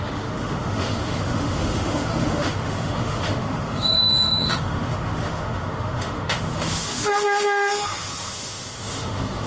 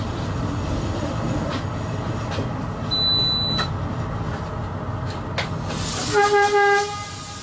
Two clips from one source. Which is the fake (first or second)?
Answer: first